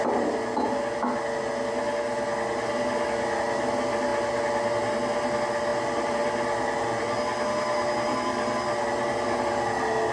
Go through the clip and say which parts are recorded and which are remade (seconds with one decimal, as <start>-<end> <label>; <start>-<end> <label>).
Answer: 0.0-10.1 recorded